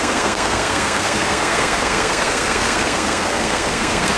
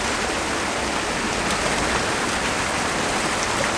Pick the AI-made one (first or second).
first